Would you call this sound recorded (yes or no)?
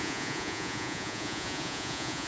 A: no